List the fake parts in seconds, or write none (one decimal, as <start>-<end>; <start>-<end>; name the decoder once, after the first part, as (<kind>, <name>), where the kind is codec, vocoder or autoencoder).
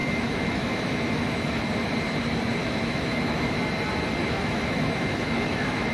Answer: 0.0-1.6 (autoencoder, DAC-VAE); 2.6-3.6; 4.2-5.9